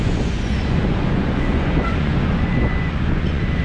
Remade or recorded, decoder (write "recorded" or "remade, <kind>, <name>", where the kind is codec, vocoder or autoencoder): remade, vocoder, Vocos